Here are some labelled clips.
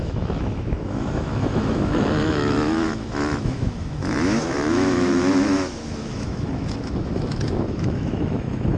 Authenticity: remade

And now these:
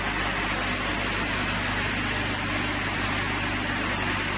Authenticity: recorded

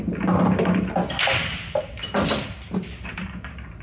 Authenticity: remade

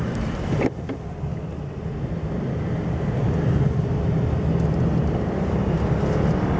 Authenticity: recorded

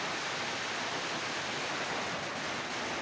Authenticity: recorded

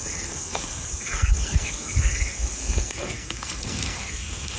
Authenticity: remade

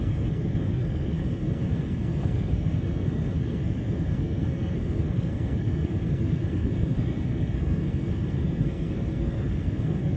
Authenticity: remade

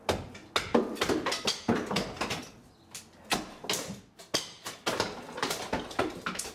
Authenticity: recorded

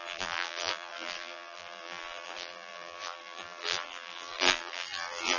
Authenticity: remade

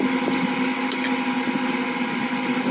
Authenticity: recorded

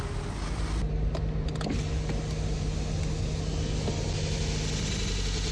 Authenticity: recorded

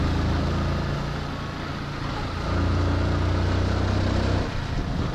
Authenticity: recorded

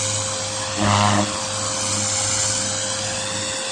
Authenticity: recorded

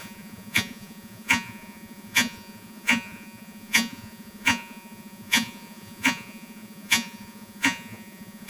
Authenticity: remade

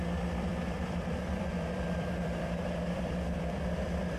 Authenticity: remade